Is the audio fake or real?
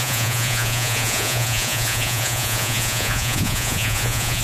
fake